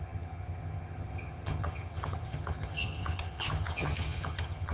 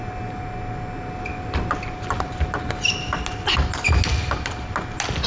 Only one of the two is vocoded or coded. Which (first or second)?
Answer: first